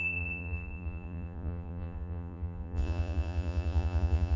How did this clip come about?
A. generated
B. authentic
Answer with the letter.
A